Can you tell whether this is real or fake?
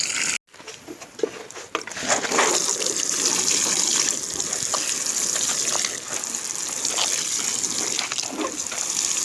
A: real